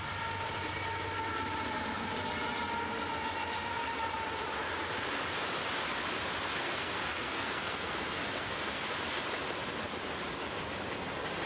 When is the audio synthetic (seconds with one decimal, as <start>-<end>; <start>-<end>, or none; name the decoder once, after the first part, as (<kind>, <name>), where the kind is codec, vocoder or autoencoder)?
6.6-8.8 (codec, SNAC)